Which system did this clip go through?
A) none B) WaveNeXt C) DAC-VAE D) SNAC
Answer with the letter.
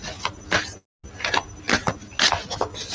A